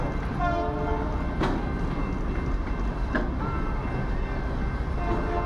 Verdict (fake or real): real